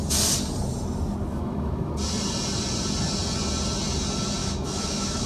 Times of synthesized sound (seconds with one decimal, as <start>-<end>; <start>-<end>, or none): 1.3-1.9; 4.4-5.3